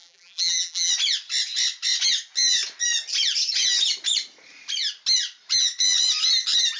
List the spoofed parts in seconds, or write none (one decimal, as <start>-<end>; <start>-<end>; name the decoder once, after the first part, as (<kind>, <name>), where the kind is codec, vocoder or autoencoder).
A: 0.0-0.9 (vocoder, BigVGAN v2)